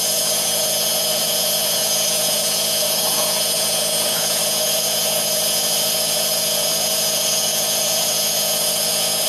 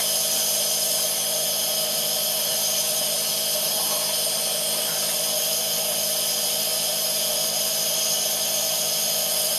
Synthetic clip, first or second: first